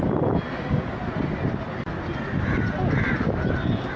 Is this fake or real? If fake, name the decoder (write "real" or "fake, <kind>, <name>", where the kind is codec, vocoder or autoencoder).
real